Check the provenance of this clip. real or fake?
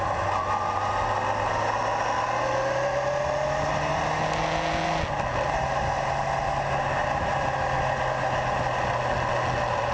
real